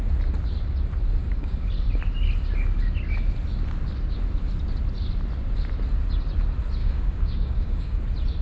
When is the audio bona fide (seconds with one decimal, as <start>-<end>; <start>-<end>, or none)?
0.0-1.2; 1.7-6.8; 8.0-8.4